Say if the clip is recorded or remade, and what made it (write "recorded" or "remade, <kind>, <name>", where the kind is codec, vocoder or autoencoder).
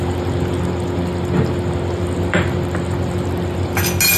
recorded